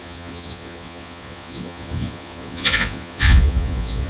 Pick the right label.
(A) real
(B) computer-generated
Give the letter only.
B